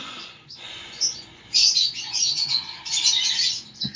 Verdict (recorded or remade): remade